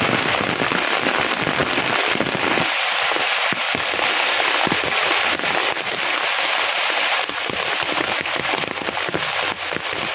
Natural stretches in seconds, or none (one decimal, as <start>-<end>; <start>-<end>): 0.0-10.1

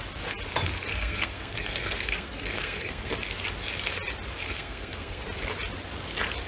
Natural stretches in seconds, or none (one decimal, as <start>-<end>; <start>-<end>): 0.0-0.9; 3.1-4.4; 5.2-6.5